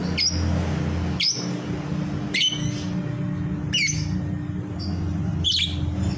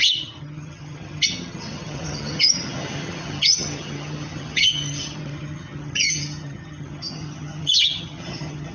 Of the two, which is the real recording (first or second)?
first